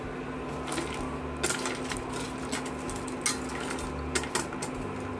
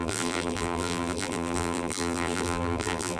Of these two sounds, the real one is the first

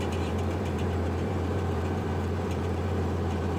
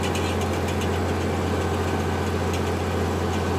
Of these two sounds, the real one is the second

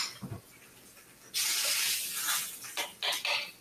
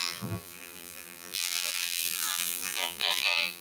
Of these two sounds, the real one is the first